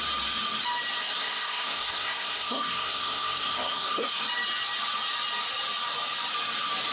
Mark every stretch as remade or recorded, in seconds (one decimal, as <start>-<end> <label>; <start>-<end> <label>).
0.0-1.0 recorded; 1.0-4.2 remade; 4.2-6.9 recorded